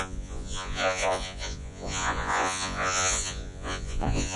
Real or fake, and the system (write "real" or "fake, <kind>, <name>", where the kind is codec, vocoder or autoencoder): fake, vocoder, Vocos